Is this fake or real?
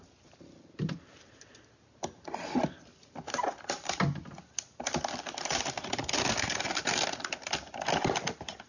real